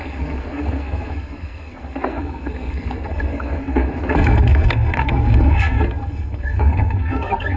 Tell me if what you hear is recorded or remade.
remade